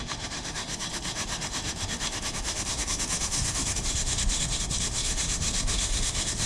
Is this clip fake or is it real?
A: fake